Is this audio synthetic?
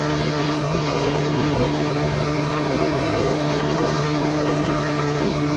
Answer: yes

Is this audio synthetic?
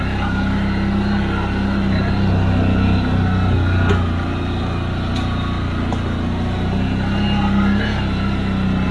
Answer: no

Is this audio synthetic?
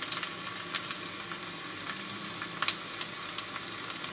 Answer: no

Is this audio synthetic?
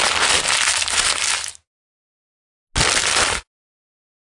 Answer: no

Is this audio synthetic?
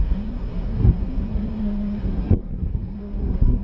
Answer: yes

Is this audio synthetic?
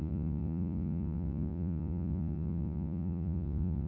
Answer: yes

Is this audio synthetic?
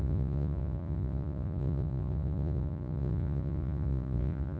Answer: yes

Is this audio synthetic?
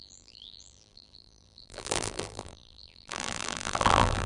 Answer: yes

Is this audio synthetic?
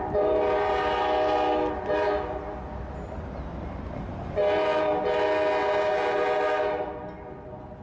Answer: no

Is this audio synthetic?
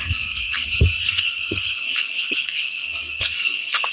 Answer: yes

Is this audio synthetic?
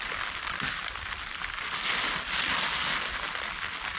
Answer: no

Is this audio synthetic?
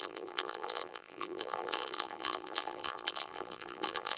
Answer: yes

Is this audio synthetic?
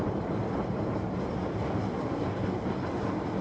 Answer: no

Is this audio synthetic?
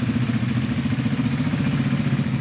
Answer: no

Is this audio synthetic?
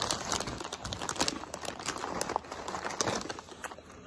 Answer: no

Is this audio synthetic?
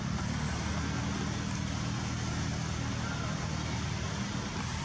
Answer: no